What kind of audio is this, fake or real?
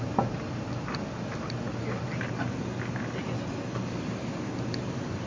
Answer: real